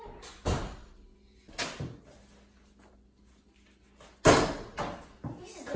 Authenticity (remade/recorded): recorded